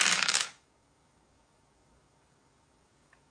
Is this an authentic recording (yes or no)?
no